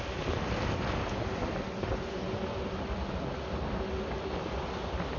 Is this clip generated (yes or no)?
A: no